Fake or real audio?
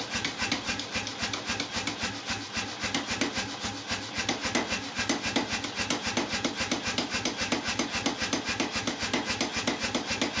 real